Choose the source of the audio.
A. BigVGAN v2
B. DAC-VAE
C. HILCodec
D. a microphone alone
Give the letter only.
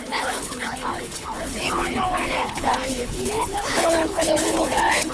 C